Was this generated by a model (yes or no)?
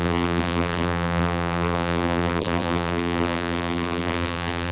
yes